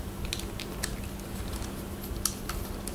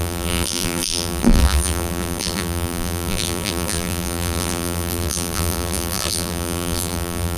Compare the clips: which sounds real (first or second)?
first